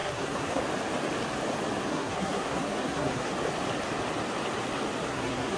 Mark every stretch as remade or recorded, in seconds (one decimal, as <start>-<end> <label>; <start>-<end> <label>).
0.0-0.6 remade; 0.6-1.9 recorded; 1.9-3.3 remade; 3.3-5.1 recorded; 5.1-5.6 remade